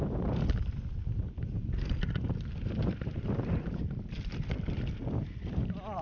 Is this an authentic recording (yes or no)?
yes